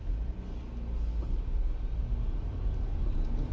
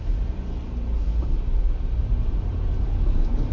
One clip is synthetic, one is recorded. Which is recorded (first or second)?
first